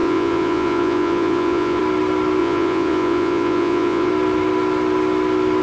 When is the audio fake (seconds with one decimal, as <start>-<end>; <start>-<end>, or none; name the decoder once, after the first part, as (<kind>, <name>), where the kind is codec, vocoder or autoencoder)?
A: 0.0-1.8 (vocoder, Vocos); 2.4-4.1